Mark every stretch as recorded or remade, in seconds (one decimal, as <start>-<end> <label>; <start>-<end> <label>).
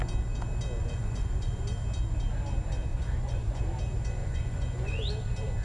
0.0-0.8 recorded; 0.8-1.6 remade; 1.6-2.9 recorded; 2.9-3.6 remade; 3.6-4.2 recorded; 4.2-5.1 remade; 5.1-5.6 recorded